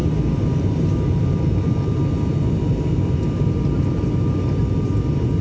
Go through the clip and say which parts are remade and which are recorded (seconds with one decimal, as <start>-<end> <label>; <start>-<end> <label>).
0.0-5.4 recorded